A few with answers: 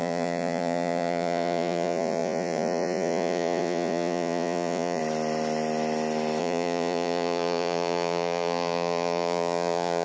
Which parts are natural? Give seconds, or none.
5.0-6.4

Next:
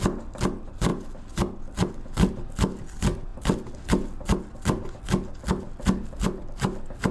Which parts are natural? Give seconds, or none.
0.0-7.1